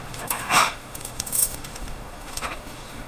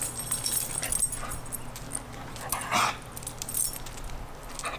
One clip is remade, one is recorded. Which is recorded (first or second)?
second